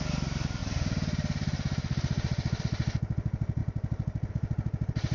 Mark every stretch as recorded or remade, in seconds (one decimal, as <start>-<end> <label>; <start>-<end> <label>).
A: 0.0-3.6 remade; 3.6-4.3 recorded; 4.3-5.1 remade